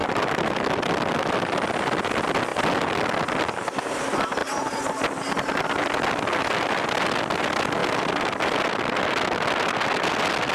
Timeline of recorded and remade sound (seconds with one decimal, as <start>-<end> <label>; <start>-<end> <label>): 0.0-10.5 recorded

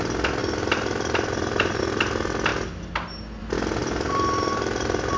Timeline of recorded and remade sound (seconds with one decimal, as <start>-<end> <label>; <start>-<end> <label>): 0.0-0.4 recorded; 0.4-1.8 remade; 1.8-3.8 recorded; 3.8-5.2 remade

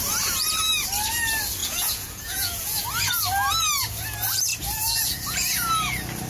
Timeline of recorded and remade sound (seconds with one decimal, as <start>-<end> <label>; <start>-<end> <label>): 0.0-1.6 recorded; 1.6-2.8 remade; 2.8-6.3 recorded

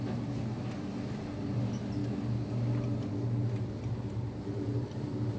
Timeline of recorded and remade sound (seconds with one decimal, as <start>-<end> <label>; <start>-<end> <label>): 0.0-5.4 recorded

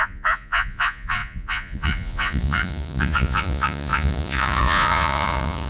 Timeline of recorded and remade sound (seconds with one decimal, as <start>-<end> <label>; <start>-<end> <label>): 0.0-5.7 remade